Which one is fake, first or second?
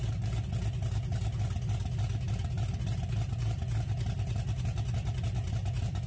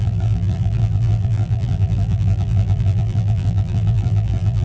second